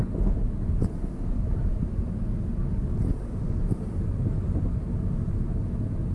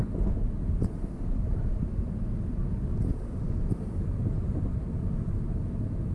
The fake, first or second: second